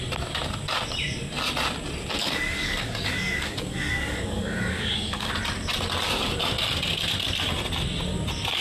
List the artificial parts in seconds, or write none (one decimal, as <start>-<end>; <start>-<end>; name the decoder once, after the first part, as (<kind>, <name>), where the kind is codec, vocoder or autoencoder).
2.2-5.3 (codec, DAC)

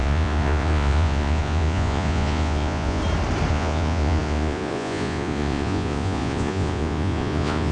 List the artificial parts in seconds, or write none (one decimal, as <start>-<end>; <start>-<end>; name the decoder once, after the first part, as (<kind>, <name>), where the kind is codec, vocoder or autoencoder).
0.0-3.0 (vocoder, Vocos); 3.5-7.7

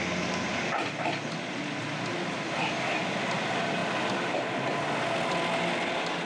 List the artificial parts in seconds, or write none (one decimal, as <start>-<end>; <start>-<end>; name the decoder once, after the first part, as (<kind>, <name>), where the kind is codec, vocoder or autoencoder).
none

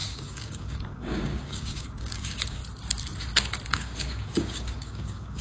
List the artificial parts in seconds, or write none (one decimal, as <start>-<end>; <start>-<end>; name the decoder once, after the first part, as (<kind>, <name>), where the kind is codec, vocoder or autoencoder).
0.0-2.6 (codec, DAC); 3.7-5.4